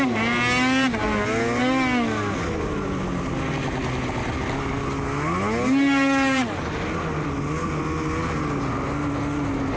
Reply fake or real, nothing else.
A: real